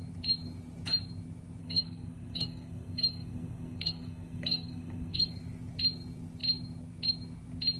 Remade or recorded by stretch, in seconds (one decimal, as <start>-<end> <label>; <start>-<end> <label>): 0.0-1.6 recorded; 1.6-5.3 remade; 5.3-7.8 recorded